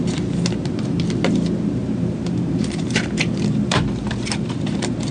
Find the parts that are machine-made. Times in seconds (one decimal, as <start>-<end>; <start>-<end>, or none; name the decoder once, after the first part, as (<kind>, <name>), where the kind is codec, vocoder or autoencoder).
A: 1.8-5.1 (vocoder, BigVGAN v2)